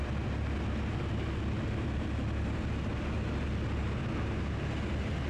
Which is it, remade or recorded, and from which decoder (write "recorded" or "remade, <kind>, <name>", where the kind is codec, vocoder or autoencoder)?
recorded